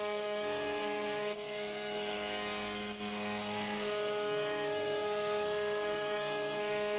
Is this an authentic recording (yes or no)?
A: no